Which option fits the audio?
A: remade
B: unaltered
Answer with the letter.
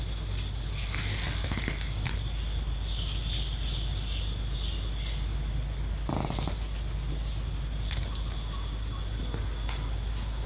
B